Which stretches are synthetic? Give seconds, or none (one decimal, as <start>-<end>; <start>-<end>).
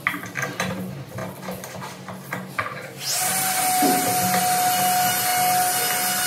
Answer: none